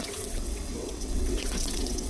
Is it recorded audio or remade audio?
remade